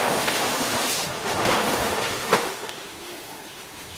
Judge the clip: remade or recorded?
remade